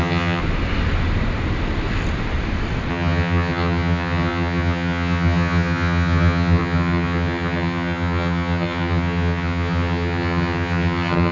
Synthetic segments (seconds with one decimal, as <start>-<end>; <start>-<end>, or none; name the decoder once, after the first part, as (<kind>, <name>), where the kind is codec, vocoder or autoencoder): 0.0-0.4 (vocoder, HiFi-GAN); 2.9-11.3